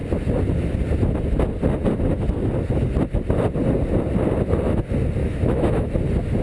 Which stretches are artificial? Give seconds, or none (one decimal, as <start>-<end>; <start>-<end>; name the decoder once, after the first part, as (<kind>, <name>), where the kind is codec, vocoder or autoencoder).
5.2-5.9 (autoencoder, DAC-VAE)